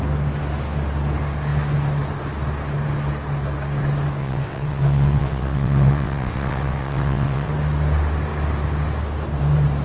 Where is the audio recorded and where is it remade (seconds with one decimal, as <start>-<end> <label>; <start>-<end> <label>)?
0.0-4.2 recorded; 4.2-7.5 remade; 7.5-9.8 recorded